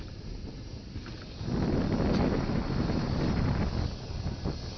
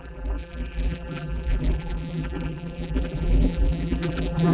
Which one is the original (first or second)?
first